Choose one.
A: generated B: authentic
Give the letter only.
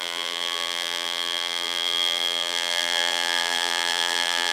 A